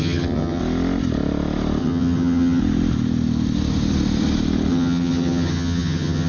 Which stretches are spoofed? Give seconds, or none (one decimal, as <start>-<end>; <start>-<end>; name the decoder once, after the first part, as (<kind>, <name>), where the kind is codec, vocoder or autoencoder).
0.0-0.6 (vocoder, HiFi-GAN); 1.8-2.6; 4.7-6.3